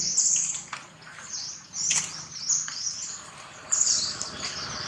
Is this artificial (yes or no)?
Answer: no